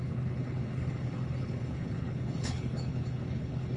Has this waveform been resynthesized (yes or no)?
yes